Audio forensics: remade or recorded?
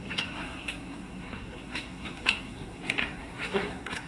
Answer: remade